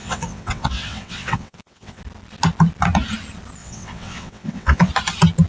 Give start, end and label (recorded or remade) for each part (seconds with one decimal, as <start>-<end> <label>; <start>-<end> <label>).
0.0-2.0 remade; 2.0-3.6 recorded; 3.6-4.9 remade; 4.9-5.5 recorded